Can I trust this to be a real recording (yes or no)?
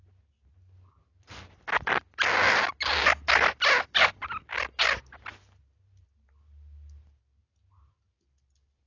yes